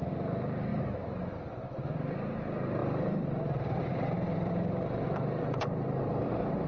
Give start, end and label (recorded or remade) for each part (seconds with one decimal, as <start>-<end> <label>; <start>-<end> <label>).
0.0-2.8 recorded; 2.8-6.7 remade